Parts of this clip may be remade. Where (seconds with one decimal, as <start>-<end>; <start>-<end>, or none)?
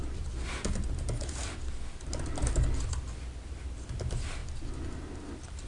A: 3.4-4.4